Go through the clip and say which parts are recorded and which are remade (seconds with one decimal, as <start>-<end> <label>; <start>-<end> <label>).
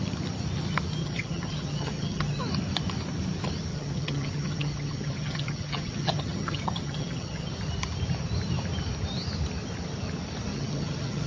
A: 0.0-1.0 recorded; 1.0-2.4 remade; 2.4-3.7 recorded; 3.7-7.5 remade; 7.5-10.5 recorded; 10.5-11.3 remade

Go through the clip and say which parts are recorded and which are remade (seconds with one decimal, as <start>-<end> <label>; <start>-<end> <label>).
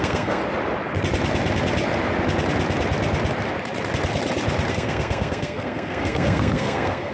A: 0.0-0.4 remade; 0.4-4.7 recorded; 4.7-7.1 remade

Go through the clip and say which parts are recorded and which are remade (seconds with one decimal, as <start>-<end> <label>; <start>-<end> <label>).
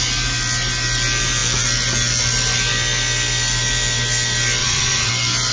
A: 0.0-4.6 recorded; 4.6-5.1 remade; 5.1-5.5 recorded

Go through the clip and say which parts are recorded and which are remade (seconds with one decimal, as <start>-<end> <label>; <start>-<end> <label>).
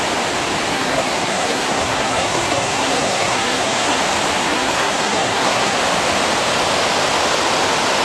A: 0.0-0.7 recorded; 0.7-4.0 remade; 4.0-4.4 recorded; 4.4-5.8 remade; 5.8-8.0 recorded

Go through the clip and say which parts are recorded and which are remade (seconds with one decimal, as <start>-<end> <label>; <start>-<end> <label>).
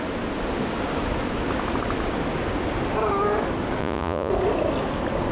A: 0.0-3.8 recorded; 3.8-4.3 remade; 4.3-5.3 recorded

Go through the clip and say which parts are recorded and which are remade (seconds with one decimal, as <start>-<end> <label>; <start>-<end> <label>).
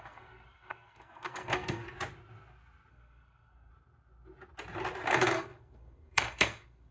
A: 0.0-1.8 remade; 1.8-2.9 recorded; 2.9-3.7 remade; 3.7-5.1 recorded; 5.1-6.9 remade